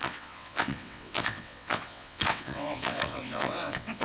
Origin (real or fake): fake